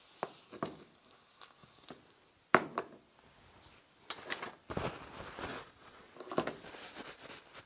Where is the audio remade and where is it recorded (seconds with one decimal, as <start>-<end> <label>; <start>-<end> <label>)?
0.0-5.5 recorded; 5.5-6.1 remade; 6.1-7.7 recorded